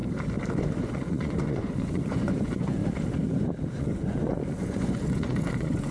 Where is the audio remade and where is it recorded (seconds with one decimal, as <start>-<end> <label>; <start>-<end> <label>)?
0.0-0.8 recorded; 0.8-2.8 remade; 2.8-3.8 recorded; 3.8-5.9 remade